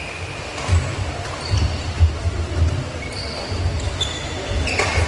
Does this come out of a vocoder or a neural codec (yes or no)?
no